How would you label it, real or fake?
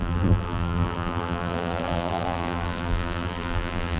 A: fake